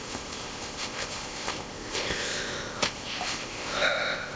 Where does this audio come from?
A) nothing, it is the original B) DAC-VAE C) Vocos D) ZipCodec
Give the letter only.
D